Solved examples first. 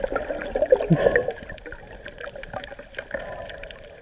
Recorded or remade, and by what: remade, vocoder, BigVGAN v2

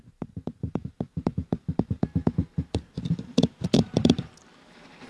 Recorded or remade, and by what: remade, vocoder, BigVGAN v2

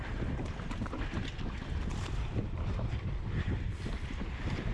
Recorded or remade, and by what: remade, vocoder, BigVGAN v2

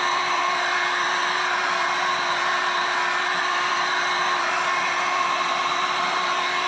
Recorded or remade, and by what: remade, vocoder, BigVGAN v2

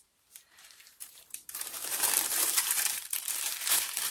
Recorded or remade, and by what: remade, vocoder, BigVGAN v2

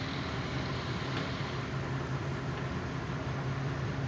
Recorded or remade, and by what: remade, vocoder, BigVGAN v2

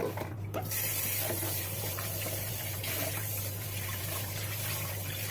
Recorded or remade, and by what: remade, vocoder, BigVGAN v2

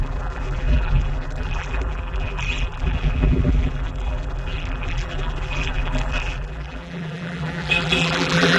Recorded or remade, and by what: remade, vocoder, BigVGAN v2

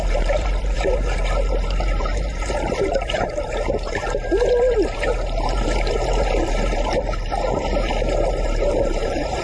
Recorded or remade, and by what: remade, vocoder, BigVGAN v2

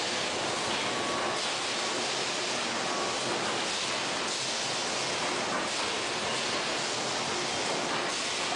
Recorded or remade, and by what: recorded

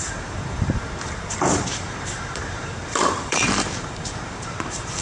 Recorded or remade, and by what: remade, vocoder, BigVGAN v2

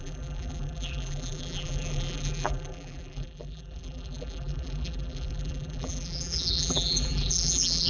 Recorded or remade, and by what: remade, vocoder, BigVGAN v2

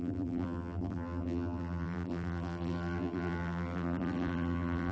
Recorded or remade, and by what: remade, vocoder, BigVGAN v2